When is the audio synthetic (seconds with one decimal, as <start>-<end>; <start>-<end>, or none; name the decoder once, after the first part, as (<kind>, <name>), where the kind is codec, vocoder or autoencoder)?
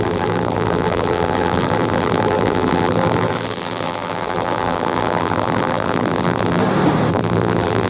0.0-6.6 (vocoder, BigVGAN v2); 7.1-7.9